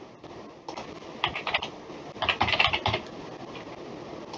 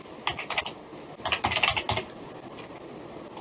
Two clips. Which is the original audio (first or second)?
second